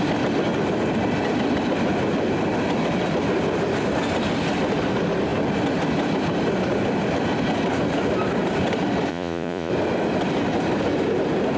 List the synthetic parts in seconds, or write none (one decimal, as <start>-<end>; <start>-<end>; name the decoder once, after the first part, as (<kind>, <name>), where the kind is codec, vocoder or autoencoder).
9.1-9.7 (vocoder, Vocos)